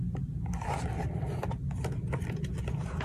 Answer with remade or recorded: recorded